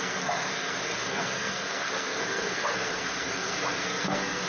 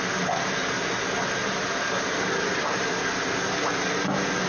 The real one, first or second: second